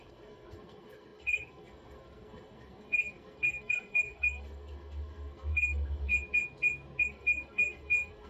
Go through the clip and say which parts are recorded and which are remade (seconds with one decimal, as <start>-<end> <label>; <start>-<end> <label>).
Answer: 0.0-6.1 remade; 6.1-7.0 recorded; 7.0-8.3 remade